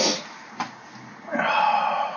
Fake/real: real